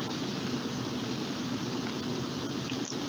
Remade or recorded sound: recorded